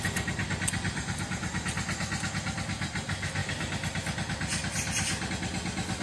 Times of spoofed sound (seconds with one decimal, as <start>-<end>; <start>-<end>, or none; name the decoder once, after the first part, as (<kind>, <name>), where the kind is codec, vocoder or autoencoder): none